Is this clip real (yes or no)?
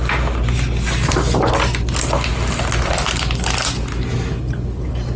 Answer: yes